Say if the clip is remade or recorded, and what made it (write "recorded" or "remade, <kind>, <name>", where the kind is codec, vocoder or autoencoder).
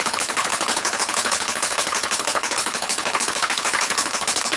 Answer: remade, codec, HILCodec